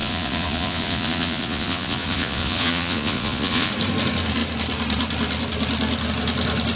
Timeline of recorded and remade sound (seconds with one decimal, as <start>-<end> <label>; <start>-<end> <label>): 0.0-3.7 remade; 3.7-6.8 recorded